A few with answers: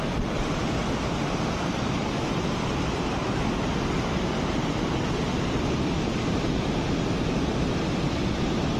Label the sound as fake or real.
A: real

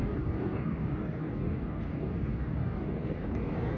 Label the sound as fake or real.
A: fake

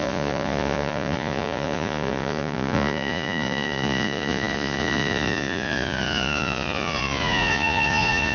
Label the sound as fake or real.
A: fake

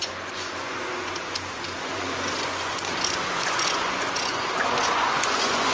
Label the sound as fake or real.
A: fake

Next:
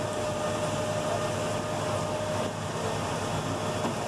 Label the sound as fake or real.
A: real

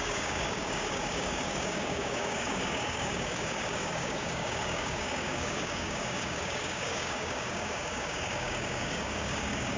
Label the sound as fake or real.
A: fake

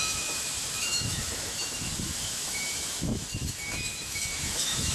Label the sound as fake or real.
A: fake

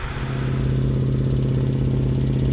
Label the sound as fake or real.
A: real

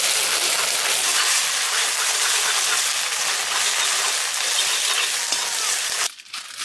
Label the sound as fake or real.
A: real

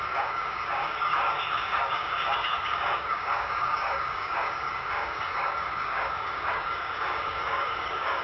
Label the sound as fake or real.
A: fake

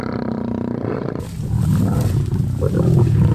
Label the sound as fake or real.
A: real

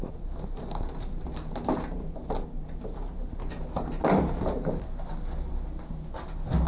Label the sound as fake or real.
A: real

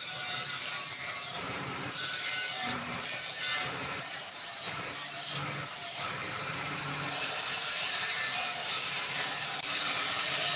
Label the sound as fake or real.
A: fake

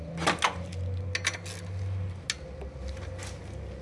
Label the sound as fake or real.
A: real